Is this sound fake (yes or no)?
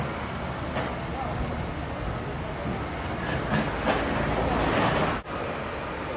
no